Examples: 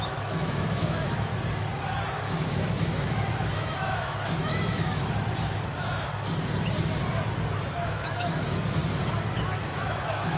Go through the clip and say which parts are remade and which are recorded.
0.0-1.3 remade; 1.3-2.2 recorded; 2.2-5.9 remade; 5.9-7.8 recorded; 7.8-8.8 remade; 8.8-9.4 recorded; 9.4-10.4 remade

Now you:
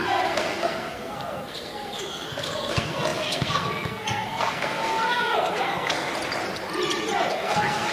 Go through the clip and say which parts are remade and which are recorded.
0.0-6.1 remade; 6.1-7.3 recorded; 7.3-7.9 remade

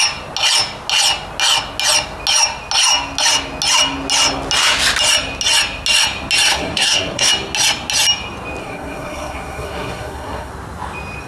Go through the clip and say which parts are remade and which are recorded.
0.0-6.5 recorded; 6.5-7.3 remade; 7.3-8.6 recorded; 8.6-10.5 remade; 10.5-11.3 recorded

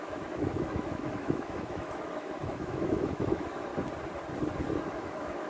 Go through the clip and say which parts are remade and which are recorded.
0.0-3.7 remade; 3.7-4.8 recorded; 4.8-5.5 remade